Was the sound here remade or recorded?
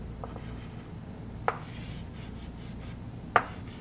recorded